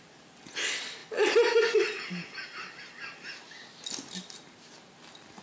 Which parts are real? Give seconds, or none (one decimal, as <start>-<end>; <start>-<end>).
0.0-5.4